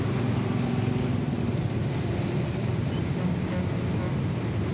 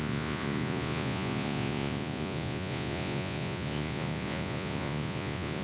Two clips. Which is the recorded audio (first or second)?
first